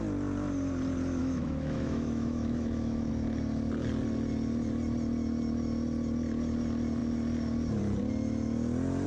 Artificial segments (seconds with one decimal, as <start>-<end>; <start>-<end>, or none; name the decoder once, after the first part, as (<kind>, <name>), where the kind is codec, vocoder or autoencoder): 1.2-3.1 (autoencoder, DAC-VAE)